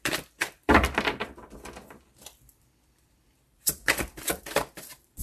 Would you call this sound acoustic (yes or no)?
no